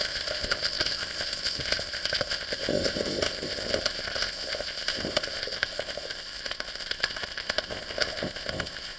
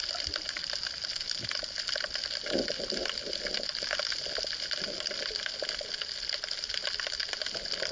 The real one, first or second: second